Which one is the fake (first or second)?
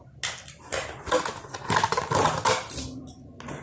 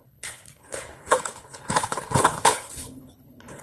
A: second